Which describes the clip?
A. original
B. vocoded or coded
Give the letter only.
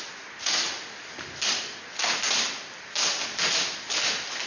A